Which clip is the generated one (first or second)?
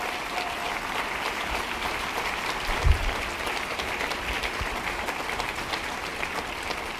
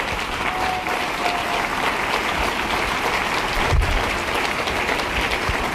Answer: first